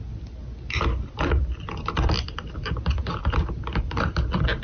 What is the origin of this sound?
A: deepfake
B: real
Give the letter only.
B